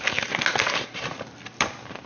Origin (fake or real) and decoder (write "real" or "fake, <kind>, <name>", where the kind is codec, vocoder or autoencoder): real